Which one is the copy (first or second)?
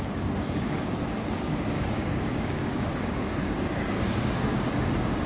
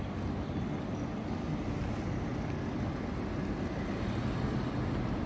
first